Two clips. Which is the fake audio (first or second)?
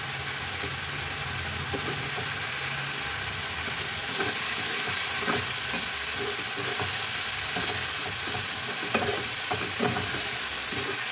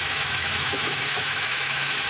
second